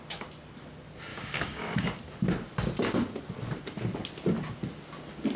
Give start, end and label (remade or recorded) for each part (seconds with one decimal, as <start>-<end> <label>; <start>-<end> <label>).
0.0-1.1 recorded; 1.1-2.0 remade; 2.0-5.4 recorded